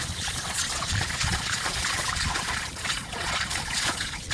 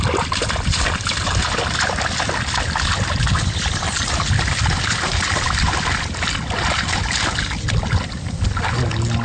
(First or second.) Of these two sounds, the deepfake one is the first